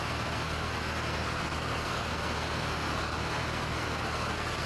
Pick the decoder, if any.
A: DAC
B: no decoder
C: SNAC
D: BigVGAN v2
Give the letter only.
C